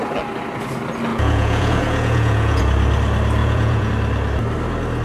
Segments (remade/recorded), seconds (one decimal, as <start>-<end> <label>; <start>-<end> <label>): 0.0-1.1 recorded; 1.1-2.6 remade; 2.6-3.4 recorded; 3.4-3.9 remade; 3.9-5.0 recorded